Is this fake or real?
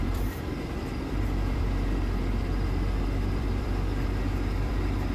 fake